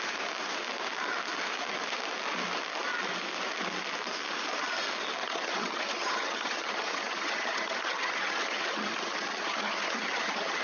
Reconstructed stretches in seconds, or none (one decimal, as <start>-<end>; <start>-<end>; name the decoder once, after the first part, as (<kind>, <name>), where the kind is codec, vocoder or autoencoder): 5.2-10.6 (vocoder, HiFi-GAN)